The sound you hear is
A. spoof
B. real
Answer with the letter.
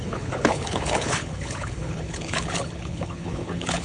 A